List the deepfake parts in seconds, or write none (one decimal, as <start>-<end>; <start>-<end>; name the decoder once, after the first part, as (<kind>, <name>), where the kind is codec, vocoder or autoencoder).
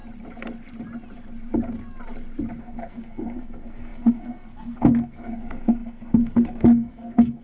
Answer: 2.6-7.4 (codec, SNAC)